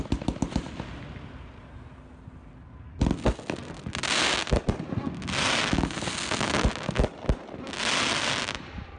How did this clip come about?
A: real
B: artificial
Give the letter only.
A